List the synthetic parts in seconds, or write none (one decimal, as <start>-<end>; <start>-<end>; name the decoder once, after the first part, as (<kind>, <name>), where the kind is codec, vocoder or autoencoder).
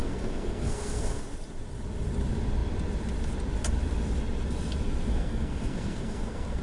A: 0.0-1.2 (codec, SNAC); 5.1-6.6